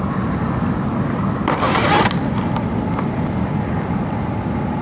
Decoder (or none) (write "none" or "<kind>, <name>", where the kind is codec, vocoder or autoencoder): none